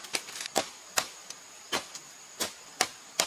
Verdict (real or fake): real